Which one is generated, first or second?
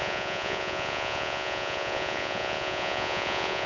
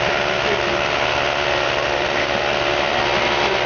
first